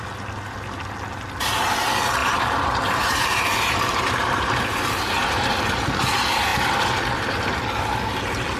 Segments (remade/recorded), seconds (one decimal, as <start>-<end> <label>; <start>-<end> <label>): 0.0-2.2 recorded; 2.2-5.6 remade; 5.6-8.6 recorded